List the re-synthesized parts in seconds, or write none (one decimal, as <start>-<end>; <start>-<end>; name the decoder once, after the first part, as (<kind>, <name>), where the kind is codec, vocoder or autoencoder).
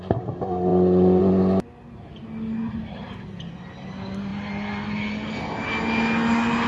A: none